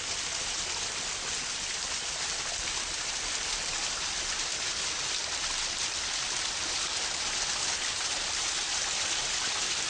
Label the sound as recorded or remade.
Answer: recorded